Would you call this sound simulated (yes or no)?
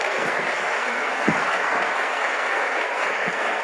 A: yes